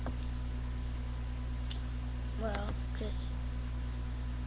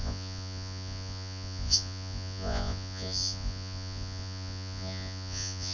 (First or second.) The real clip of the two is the first